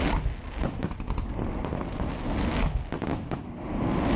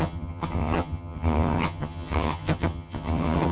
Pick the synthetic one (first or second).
second